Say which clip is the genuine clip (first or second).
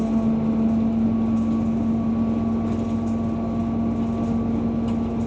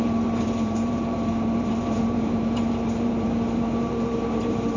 first